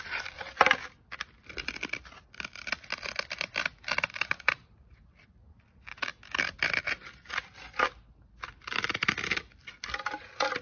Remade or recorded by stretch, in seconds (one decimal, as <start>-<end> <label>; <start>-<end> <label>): 0.0-10.6 recorded